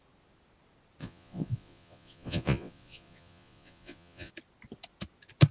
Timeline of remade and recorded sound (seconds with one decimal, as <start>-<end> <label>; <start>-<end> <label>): 0.0-1.0 recorded; 1.0-4.3 remade; 4.3-5.5 recorded